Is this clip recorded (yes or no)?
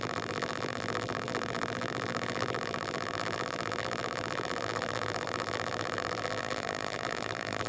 no